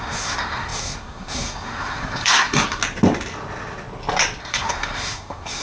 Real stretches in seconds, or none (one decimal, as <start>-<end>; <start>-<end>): 2.8-4.4